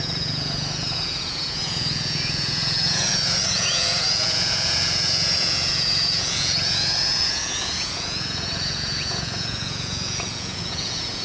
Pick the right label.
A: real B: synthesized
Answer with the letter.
B